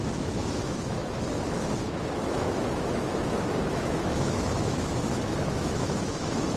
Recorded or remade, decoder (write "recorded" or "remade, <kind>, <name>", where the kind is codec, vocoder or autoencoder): remade, autoencoder, DAC-VAE